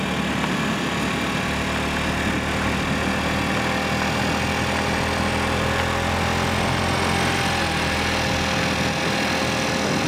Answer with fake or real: real